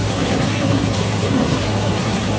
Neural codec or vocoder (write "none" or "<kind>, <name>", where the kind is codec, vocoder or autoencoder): codec, SNAC